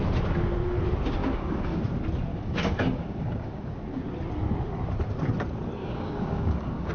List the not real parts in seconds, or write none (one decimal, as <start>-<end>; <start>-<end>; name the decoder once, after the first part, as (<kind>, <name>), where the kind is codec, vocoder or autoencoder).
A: 1.2-1.8 (codec, DAC); 2.3-3.7; 5.8-6.9